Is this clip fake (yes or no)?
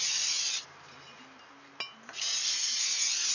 no